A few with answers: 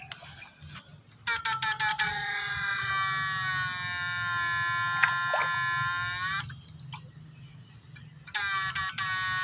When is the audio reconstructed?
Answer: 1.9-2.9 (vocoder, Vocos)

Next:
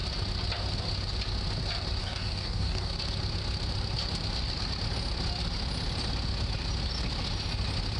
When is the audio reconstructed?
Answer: 2.0-2.9 (codec, DAC)

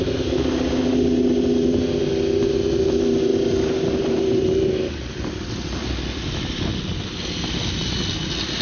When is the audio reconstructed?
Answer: 3.3-5.5 (vocoder, BigVGAN v2)

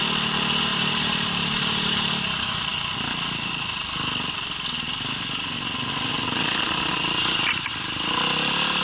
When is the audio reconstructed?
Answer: 0.7-2.1 (vocoder, BigVGAN v2)

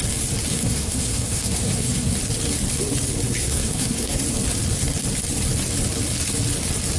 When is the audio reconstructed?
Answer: 0.5-2.2 (codec, SNAC); 3.4-4.2

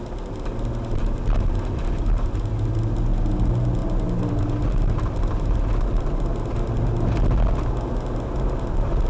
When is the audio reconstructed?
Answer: none